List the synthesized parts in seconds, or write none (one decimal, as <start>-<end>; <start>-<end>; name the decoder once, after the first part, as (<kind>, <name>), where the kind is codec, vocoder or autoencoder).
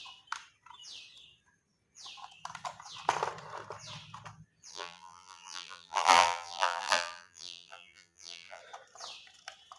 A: 4.7-8.6 (vocoder, BigVGAN v2)